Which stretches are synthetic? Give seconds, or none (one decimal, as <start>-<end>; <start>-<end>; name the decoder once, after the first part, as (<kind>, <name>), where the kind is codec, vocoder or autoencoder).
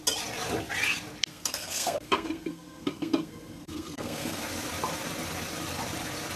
1.3-4.4 (codec, SNAC)